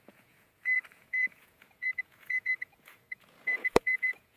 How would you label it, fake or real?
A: fake